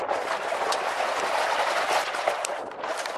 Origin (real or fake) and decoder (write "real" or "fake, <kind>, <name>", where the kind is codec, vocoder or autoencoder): real